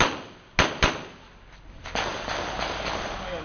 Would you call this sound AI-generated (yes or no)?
no